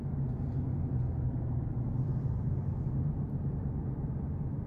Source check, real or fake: real